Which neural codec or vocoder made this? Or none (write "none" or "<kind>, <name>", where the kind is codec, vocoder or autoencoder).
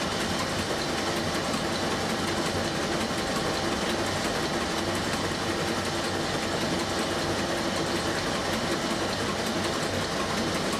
none